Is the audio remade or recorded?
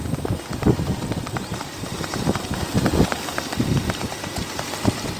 remade